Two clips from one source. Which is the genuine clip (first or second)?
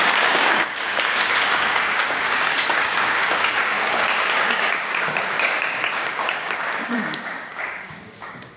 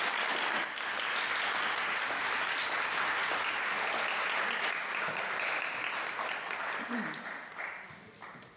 second